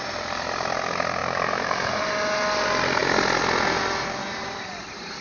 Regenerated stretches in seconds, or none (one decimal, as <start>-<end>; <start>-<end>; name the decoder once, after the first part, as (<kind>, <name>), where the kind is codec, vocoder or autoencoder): 1.2-2.1 (vocoder, BigVGAN v2); 4.2-5.2